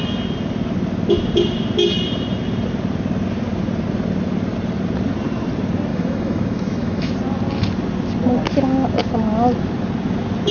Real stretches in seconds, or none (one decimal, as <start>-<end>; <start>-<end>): 0.0-5.9; 7.1-10.5